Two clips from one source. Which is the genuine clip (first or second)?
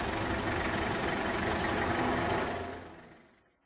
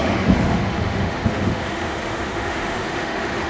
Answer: first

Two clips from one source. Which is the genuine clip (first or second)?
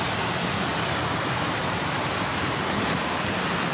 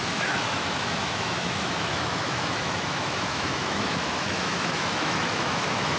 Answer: first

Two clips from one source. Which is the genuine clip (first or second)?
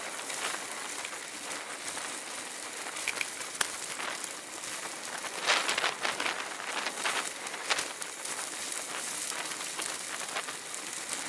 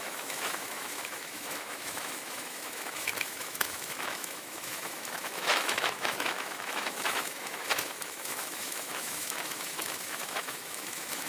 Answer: first